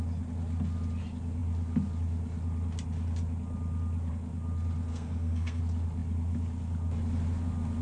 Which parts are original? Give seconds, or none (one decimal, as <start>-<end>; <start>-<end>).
0.0-4.9; 5.6-7.8